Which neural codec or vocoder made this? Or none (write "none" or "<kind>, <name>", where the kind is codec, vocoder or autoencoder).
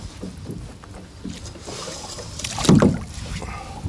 none